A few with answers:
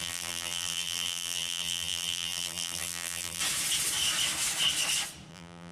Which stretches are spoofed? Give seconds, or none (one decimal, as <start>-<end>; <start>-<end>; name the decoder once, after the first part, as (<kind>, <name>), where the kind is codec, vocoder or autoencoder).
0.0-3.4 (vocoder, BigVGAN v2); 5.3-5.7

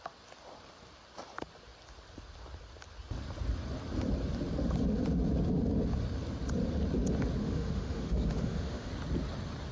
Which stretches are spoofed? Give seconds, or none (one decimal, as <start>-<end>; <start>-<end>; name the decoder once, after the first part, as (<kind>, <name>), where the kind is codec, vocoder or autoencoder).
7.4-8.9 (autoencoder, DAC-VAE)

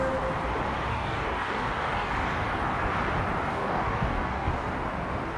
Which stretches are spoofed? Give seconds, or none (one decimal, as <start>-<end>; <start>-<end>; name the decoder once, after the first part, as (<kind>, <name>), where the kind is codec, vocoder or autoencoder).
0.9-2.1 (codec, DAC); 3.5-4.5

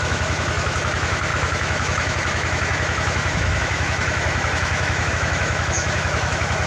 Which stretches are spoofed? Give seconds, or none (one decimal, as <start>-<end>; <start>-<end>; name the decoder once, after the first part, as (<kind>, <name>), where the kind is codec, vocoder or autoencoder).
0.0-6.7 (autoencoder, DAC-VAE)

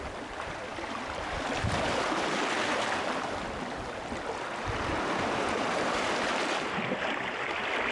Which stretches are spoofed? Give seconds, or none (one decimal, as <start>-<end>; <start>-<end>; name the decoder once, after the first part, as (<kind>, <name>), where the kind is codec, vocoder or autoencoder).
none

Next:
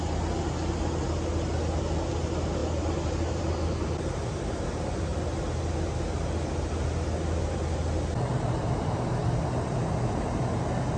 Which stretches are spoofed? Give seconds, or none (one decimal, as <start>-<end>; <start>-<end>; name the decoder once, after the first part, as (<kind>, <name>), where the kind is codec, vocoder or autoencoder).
none

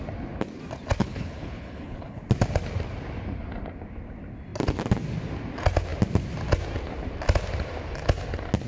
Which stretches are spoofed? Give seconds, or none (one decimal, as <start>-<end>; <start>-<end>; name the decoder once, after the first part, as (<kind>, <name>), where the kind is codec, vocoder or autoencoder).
1.0-2.2 (codec, HILCodec)